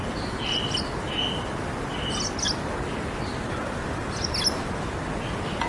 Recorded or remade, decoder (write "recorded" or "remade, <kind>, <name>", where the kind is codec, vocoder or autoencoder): recorded